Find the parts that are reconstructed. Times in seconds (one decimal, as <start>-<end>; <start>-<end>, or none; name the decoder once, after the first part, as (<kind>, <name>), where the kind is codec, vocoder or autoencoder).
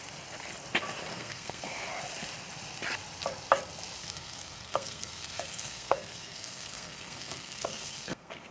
1.1-1.9 (codec, SNAC); 4.0-8.5